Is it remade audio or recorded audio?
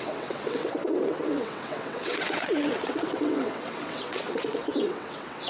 remade